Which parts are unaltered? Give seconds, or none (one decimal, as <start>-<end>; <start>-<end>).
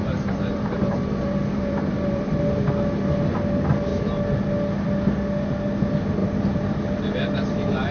2.6-6.2; 7.0-7.9